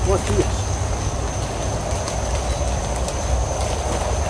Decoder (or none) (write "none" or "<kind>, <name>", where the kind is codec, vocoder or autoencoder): none